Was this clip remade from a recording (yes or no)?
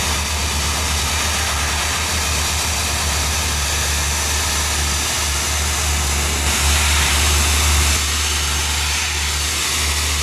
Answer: no